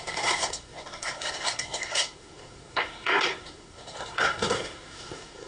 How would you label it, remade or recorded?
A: remade